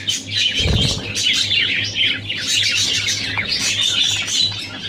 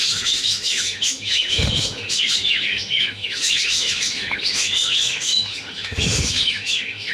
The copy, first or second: second